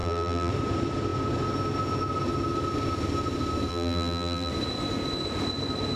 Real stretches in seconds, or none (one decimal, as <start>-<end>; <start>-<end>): 0.5-3.7; 4.5-6.0